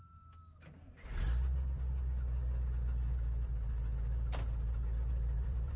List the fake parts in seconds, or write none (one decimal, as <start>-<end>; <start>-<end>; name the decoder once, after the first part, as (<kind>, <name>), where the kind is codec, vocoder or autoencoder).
5.1-5.8 (vocoder, BigVGAN v2)